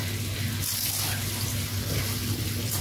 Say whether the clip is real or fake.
real